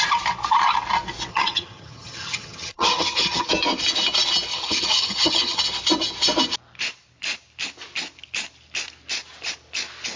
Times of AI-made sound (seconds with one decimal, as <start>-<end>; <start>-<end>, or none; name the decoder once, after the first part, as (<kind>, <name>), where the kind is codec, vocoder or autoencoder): 1.3-3.5 (vocoder, HiFi-GAN); 4.5-5.6